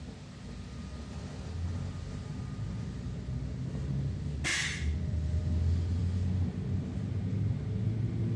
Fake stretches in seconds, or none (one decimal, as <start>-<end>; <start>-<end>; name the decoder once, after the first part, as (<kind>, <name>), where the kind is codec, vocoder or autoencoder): 4.5-5.4 (vocoder, BigVGAN v2)